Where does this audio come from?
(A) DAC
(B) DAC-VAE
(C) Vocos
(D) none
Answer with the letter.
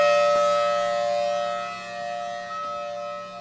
D